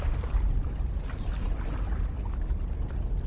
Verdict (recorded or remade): recorded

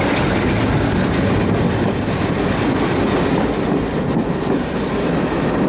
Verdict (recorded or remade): recorded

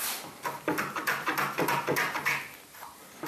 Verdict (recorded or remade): recorded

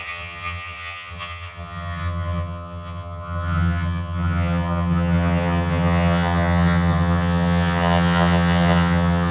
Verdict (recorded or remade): remade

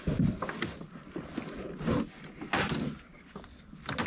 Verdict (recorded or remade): recorded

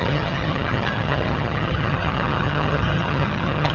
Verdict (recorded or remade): remade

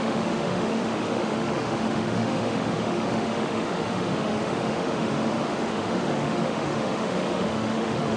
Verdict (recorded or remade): remade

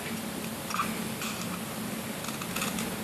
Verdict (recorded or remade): recorded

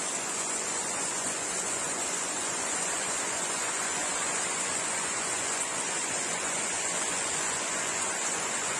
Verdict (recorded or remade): remade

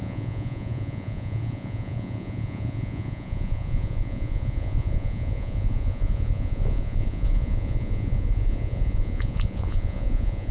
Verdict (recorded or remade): remade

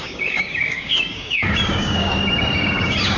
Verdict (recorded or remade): remade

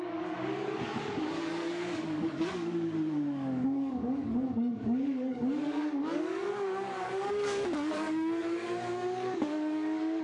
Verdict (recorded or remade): remade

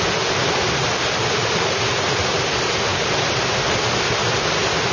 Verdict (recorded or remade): recorded